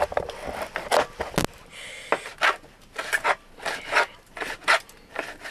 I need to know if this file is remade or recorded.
recorded